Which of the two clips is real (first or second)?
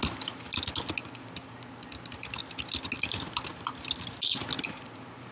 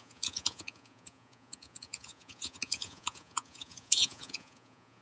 first